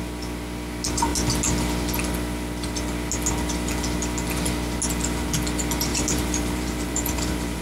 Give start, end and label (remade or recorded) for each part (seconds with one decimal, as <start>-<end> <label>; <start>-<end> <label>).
0.0-5.9 recorded; 5.9-7.6 remade